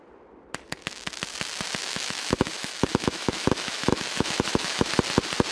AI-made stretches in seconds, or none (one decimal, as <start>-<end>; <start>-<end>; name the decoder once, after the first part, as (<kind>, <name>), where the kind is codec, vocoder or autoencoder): 1.8-4.9 (autoencoder, DAC-VAE)